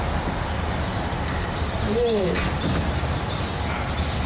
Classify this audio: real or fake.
real